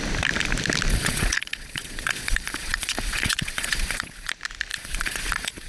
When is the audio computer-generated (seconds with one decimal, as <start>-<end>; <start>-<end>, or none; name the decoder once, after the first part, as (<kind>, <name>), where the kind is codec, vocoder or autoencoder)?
0.9-4.3 (vocoder, Vocos); 4.7-5.7